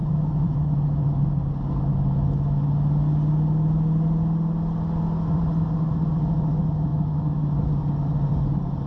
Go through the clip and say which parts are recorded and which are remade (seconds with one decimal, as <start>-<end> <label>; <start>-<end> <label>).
0.0-1.3 remade; 1.3-6.9 recorded; 6.9-7.7 remade; 7.7-8.9 recorded